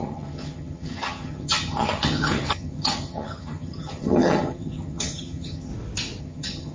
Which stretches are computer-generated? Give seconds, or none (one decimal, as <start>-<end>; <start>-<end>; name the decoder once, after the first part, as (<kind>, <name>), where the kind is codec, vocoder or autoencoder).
0.0-5.7 (vocoder, HiFi-GAN); 6.2-6.7

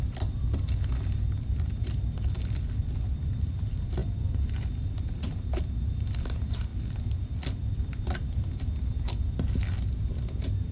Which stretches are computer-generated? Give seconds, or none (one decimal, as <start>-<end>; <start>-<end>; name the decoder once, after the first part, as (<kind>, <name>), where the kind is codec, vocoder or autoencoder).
none

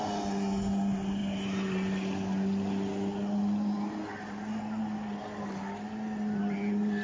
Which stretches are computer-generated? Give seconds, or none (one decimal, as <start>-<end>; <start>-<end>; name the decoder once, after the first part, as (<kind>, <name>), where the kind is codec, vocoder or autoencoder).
none

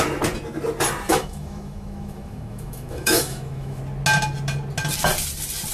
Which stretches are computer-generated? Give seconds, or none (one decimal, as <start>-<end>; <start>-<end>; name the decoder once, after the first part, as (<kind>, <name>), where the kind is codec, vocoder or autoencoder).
1.1-3.8 (autoencoder, DAC-VAE)

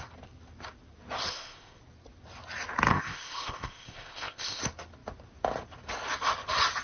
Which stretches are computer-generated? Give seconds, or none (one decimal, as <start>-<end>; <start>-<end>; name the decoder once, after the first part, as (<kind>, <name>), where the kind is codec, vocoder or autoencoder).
1.3-1.8 (codec, ZipCodec); 2.9-4.6

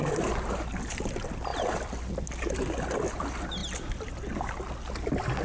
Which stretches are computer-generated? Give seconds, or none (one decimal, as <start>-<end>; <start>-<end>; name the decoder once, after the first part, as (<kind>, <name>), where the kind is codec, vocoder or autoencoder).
none

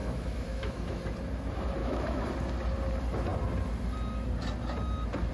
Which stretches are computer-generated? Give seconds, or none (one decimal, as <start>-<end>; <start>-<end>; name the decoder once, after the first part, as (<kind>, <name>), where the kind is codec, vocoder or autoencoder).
0.0-1.0 (autoencoder, DAC-VAE); 1.8-2.3